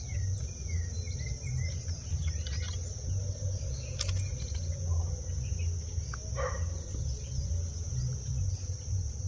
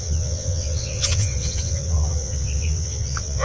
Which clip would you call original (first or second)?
first